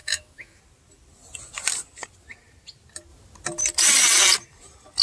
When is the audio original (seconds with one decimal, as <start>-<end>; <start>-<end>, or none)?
0.6-5.0